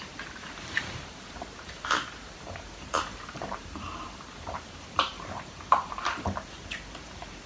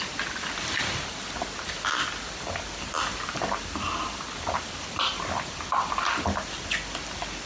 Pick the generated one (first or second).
first